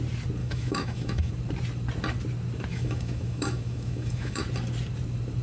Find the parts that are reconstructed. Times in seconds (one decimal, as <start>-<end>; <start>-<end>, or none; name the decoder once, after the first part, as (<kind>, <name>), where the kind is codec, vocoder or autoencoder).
0.4-1.3 (autoencoder, DAC-VAE); 2.7-4.4